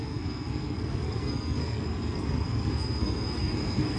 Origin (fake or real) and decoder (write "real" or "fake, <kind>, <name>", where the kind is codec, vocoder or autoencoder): fake, codec, SNAC